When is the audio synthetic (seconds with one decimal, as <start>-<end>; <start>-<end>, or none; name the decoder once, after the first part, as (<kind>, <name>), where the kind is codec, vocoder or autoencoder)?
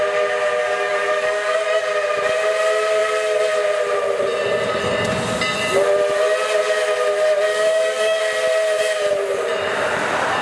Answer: 0.6-1.8 (codec, DAC); 7.5-8.2